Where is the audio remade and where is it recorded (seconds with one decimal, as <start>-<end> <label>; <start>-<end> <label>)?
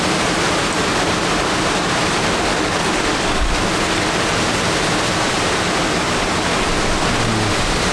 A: 0.0-2.5 recorded; 2.5-3.5 remade; 3.5-7.9 recorded